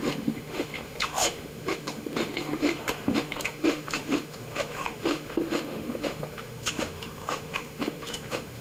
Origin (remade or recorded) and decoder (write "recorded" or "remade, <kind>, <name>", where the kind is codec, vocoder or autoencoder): remade, autoencoder, DAC-VAE